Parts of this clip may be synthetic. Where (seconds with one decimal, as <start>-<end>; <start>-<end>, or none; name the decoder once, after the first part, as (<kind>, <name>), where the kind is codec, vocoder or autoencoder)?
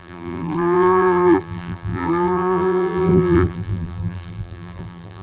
0.0-5.2 (vocoder, BigVGAN v2)